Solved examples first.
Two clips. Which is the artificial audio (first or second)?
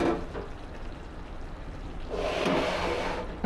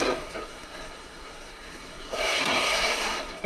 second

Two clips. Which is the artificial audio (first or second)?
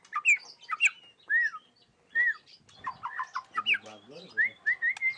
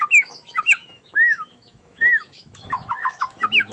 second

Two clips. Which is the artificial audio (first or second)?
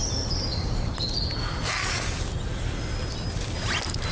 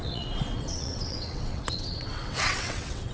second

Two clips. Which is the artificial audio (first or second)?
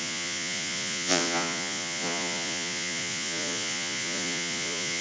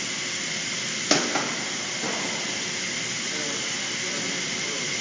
first